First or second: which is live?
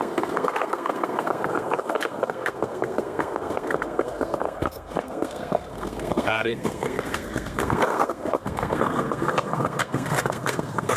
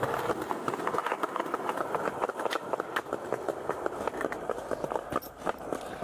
second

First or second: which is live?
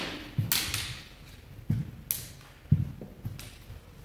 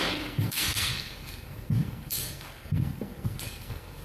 first